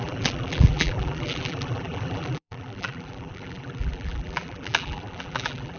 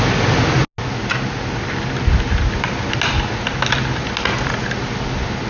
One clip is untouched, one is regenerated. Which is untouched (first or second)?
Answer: second